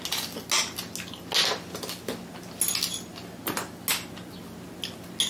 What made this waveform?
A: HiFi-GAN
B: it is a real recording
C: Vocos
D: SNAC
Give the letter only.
B